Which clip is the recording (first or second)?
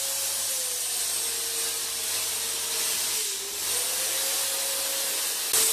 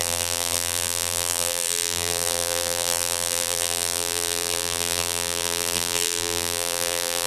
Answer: first